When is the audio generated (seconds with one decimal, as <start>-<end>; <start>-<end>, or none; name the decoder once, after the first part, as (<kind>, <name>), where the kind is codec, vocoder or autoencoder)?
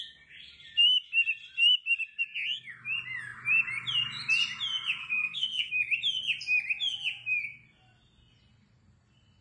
5.0-5.7 (codec, SNAC)